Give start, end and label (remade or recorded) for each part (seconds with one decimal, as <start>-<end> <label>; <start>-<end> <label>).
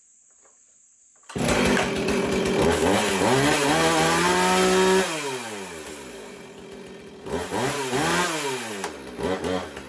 0.0-9.9 recorded